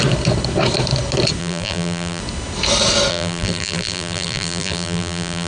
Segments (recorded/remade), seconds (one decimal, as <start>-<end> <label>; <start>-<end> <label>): 0.0-1.4 recorded; 1.4-2.2 remade; 2.2-3.1 recorded; 3.1-5.5 remade